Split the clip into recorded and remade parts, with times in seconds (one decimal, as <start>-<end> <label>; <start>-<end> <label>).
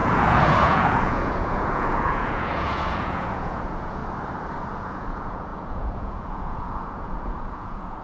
0.0-4.0 remade; 4.0-4.7 recorded; 4.7-8.0 remade